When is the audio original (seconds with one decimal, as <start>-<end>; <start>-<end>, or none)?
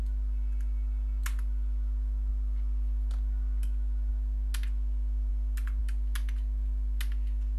0.0-7.6